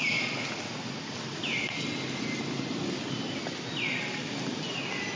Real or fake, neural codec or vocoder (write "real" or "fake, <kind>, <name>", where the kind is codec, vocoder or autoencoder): real